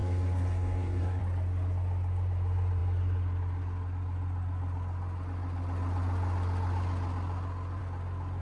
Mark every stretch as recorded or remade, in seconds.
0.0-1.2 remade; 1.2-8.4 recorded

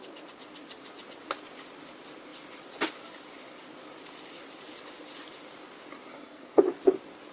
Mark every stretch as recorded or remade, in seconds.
0.0-6.1 recorded; 6.1-6.6 remade; 6.6-7.3 recorded

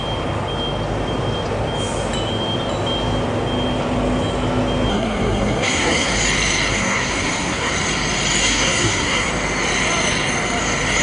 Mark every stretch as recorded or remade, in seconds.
0.0-4.9 recorded; 4.9-6.2 remade; 6.2-6.7 recorded; 6.7-7.7 remade; 7.7-8.4 recorded; 8.4-9.3 remade; 9.3-11.0 recorded

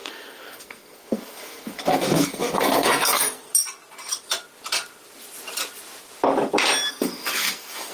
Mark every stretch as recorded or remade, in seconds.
0.0-3.5 remade; 3.5-6.9 recorded; 6.9-7.9 remade